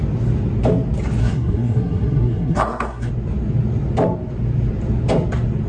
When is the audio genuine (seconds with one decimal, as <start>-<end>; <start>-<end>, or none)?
0.0-1.2; 3.1-5.7